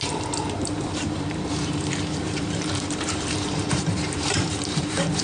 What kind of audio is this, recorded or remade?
remade